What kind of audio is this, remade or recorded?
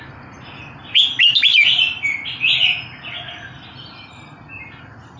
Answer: recorded